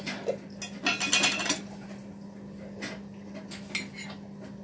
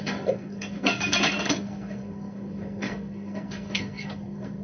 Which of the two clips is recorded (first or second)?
first